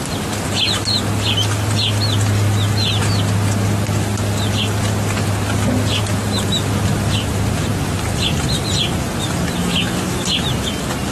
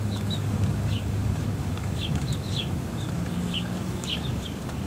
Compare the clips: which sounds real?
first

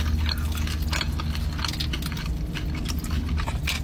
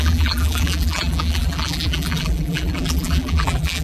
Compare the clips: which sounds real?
first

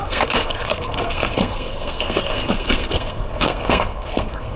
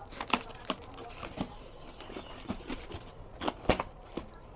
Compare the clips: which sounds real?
second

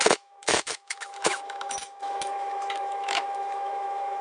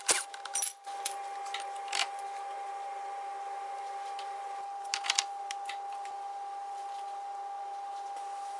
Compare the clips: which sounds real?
second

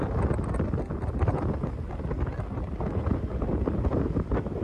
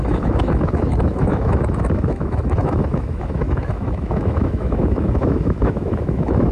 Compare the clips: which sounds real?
first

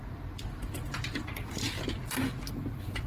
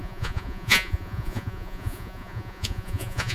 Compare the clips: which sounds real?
first